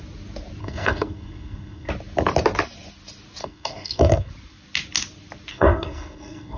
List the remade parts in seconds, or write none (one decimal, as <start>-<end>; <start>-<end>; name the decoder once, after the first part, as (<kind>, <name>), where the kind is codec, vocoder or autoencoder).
0.6-1.9 (codec, SNAC); 3.4-4.3; 5.5-6.6